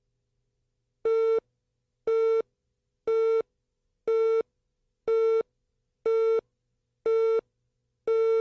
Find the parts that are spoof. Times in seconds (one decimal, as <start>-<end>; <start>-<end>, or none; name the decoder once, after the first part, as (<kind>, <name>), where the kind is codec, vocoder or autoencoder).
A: none